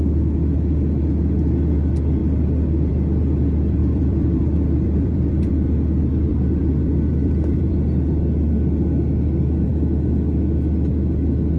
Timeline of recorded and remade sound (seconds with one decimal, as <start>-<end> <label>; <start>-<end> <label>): 0.0-3.8 recorded; 3.8-5.5 remade; 5.5-6.3 recorded; 6.3-7.7 remade; 7.7-11.6 recorded